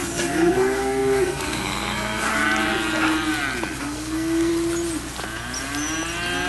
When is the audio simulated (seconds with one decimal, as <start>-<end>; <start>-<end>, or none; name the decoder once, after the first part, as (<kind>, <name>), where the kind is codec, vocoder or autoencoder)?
0.0-2.3 (codec, SNAC); 3.8-4.5